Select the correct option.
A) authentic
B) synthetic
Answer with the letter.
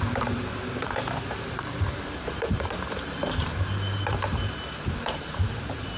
B